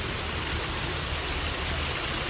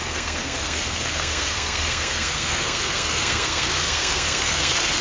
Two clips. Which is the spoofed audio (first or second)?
second